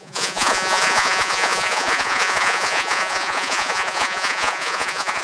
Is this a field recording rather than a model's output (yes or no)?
no